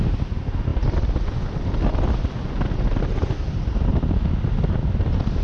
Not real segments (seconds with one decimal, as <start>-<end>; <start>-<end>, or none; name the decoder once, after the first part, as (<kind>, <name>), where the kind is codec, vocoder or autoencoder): none